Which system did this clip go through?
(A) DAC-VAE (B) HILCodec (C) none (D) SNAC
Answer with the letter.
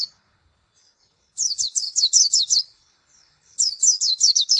B